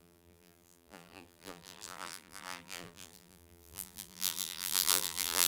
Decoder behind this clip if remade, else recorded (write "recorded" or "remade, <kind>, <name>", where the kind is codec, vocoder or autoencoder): remade, vocoder, BigVGAN v2